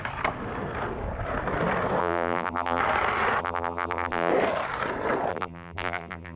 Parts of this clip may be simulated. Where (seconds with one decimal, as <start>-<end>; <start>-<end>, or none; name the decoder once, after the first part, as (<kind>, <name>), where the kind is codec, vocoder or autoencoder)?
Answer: 2.0-2.8 (vocoder, BigVGAN v2); 3.4-4.3; 5.3-6.4